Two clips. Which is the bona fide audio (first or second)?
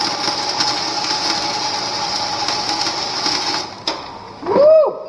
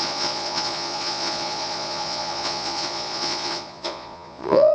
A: first